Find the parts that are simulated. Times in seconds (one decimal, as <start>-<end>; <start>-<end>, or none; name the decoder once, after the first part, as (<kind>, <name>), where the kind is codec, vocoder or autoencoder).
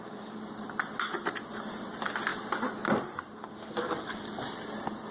none